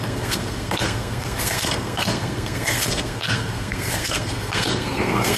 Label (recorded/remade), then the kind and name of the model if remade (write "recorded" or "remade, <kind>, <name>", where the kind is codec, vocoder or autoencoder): remade, codec, SNAC